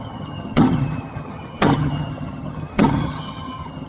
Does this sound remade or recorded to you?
remade